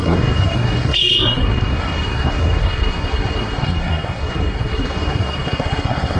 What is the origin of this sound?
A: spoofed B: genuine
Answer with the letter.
A